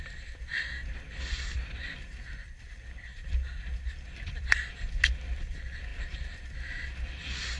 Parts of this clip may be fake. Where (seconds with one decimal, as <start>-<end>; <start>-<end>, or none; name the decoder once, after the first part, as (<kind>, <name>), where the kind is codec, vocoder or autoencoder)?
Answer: 2.4-4.7 (vocoder, BigVGAN v2)